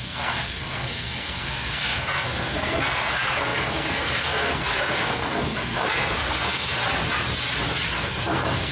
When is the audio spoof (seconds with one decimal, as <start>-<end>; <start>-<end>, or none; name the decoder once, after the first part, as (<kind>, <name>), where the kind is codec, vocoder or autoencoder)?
0.0-6.8 (codec, SNAC); 7.9-8.7